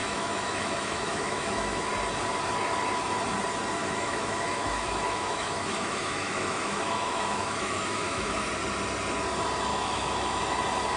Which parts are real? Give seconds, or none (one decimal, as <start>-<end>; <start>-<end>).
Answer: 1.9-3.8; 8.5-9.7; 10.4-11.0